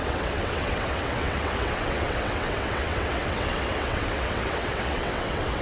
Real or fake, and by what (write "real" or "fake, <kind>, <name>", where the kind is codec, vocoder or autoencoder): fake, vocoder, WaveNeXt